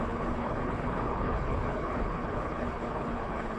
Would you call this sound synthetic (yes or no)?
yes